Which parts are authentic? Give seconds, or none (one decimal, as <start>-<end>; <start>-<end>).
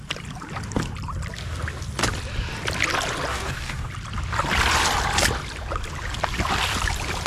0.0-3.3; 3.9-7.3